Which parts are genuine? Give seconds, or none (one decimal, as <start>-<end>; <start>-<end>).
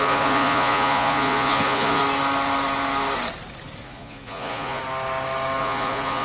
2.0-3.8; 4.8-5.6